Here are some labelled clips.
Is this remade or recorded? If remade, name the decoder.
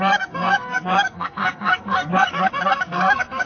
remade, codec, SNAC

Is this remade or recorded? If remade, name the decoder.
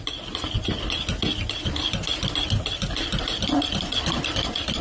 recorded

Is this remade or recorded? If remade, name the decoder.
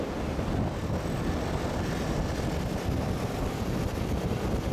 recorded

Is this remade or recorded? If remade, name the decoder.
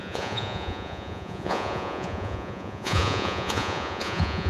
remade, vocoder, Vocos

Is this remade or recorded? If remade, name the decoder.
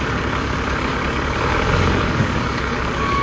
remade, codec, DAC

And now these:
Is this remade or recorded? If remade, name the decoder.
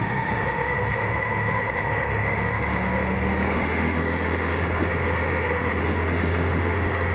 remade, autoencoder, DAC-VAE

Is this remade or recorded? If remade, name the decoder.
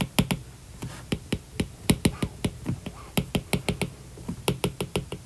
recorded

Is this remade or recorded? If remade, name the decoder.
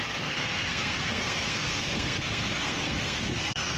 remade, codec, SNAC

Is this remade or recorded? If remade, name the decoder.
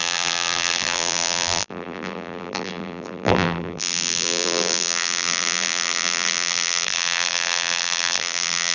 remade, vocoder, BigVGAN v2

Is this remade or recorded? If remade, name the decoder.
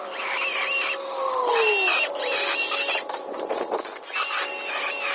recorded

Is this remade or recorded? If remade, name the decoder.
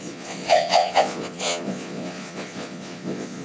remade, vocoder, Vocos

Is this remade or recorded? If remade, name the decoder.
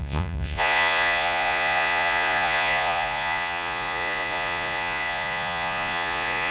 remade, vocoder, Vocos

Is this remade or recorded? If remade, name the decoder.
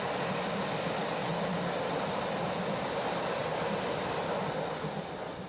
recorded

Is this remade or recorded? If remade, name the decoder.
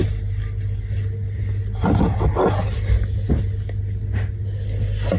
recorded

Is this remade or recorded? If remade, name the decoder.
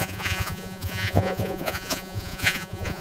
remade, vocoder, Vocos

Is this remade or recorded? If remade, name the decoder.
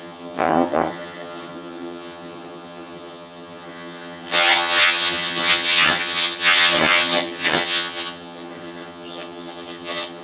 remade, vocoder, HiFi-GAN